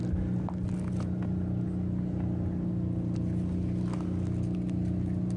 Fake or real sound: real